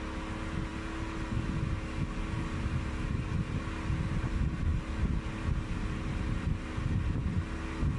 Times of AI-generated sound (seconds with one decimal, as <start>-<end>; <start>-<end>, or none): none